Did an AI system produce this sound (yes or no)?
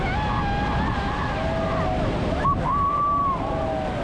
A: no